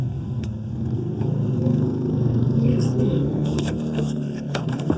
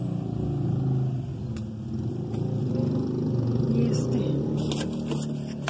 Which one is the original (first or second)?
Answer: second